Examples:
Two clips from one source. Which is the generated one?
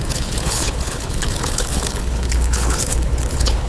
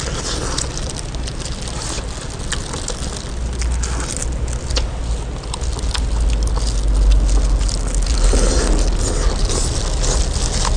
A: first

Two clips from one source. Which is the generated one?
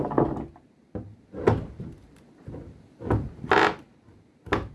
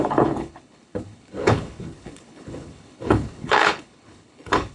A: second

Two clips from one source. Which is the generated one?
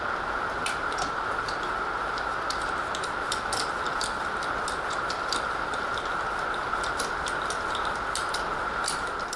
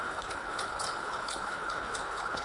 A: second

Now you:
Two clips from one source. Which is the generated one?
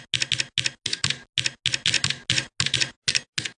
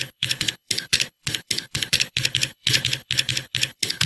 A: second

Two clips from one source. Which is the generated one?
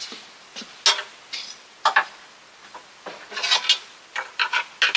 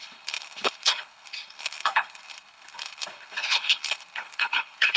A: second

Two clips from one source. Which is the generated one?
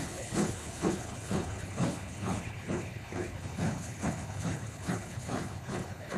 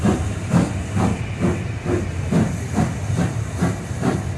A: first